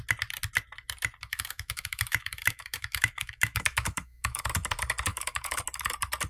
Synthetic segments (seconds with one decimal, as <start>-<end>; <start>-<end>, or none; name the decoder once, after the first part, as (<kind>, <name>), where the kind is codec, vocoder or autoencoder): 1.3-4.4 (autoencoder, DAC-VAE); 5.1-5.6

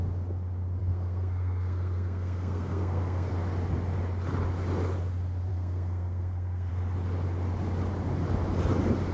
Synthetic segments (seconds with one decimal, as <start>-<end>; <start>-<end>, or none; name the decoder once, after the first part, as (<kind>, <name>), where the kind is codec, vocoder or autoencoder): 0.8-3.3 (codec, SNAC); 5.5-6.7

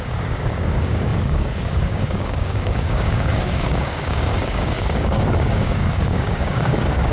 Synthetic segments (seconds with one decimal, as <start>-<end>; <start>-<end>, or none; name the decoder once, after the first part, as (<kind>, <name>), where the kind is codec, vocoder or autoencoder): 0.0-7.1 (codec, DAC)